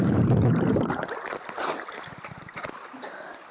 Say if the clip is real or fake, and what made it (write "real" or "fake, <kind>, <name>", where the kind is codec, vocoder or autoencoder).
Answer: real